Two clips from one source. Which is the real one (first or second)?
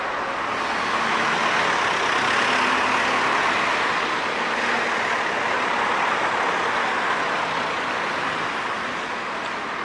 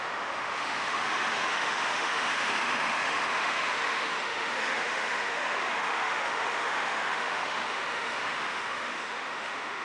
first